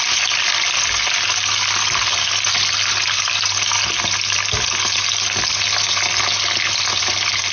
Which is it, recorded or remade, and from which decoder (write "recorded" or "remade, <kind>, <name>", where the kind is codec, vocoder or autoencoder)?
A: recorded